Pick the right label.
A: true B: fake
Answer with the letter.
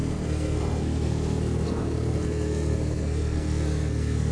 B